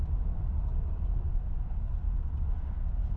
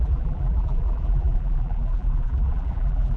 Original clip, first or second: first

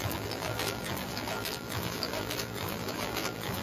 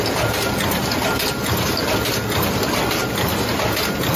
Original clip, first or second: second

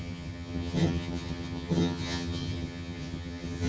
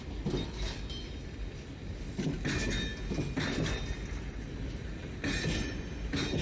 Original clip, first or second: second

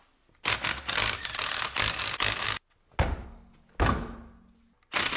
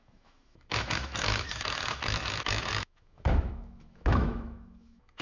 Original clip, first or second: first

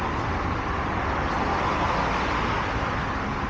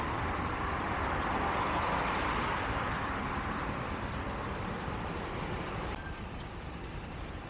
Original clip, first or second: first